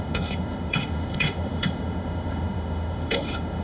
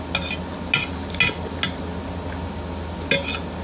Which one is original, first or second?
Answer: second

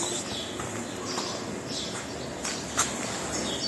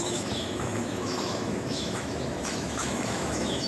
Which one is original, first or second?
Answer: first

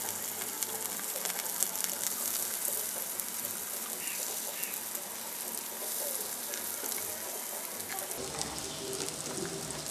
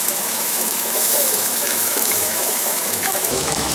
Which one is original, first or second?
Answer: first